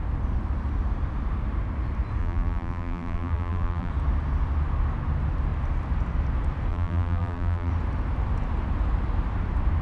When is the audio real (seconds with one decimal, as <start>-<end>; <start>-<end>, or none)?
0.0-2.2; 3.9-6.7; 7.7-9.8